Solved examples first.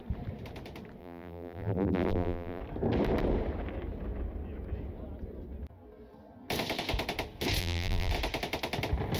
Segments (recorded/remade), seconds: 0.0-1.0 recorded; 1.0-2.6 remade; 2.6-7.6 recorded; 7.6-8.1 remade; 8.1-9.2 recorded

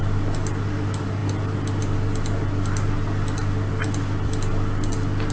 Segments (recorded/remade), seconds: 0.0-5.3 recorded

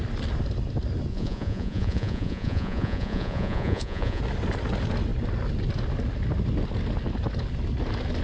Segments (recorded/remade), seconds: 0.0-1.1 recorded; 1.1-4.2 remade; 4.2-8.2 recorded

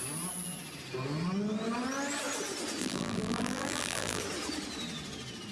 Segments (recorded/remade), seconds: 0.0-2.8 recorded; 2.8-4.2 remade; 4.2-5.5 recorded

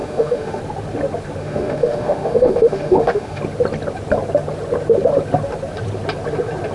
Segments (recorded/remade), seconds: 0.0-0.6 remade; 0.6-1.4 recorded; 1.4-3.4 remade; 3.4-6.7 recorded

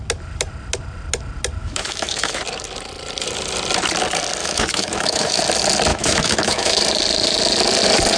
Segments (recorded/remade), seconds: 0.0-1.6 recorded; 1.6-2.4 remade; 2.4-4.4 recorded; 4.4-5.4 remade; 5.4-5.9 recorded; 5.9-6.8 remade; 6.8-8.2 recorded

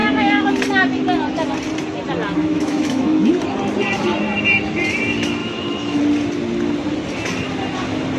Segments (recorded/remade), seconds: 0.0-0.5 remade; 0.5-2.4 recorded; 2.4-3.3 remade; 3.3-5.4 recorded; 5.4-6.0 remade; 6.0-8.2 recorded

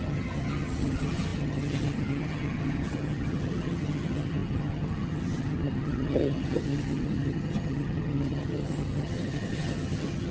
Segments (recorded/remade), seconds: 0.0-10.3 remade